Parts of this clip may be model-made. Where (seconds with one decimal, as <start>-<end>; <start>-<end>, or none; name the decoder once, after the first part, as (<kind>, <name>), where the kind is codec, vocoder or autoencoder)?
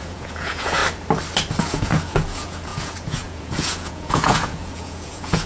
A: 0.0-0.8 (vocoder, Vocos); 1.6-5.5